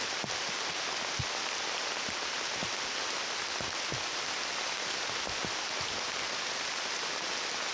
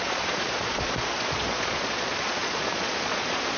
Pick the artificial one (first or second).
second